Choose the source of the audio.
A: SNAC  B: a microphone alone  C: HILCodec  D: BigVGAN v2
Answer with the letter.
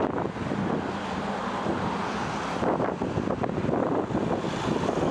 B